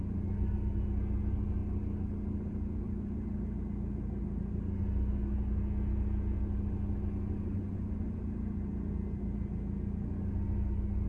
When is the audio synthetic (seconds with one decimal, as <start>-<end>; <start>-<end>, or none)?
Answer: 7.5-8.2